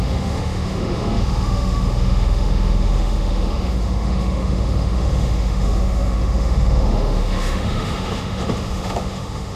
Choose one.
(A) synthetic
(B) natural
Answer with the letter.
A